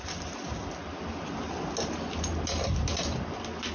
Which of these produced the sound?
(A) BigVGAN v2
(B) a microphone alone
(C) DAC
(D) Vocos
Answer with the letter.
B